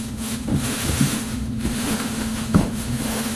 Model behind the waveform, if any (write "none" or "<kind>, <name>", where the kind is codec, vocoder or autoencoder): autoencoder, DAC-VAE